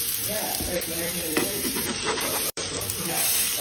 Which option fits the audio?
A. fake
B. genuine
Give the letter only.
A